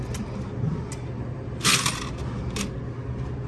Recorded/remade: recorded